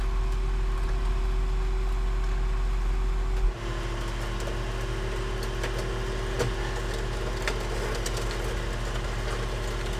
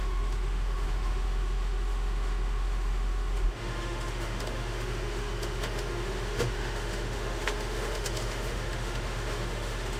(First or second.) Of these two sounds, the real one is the first